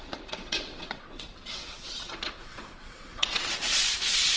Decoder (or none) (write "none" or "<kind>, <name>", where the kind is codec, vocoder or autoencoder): vocoder, WaveNeXt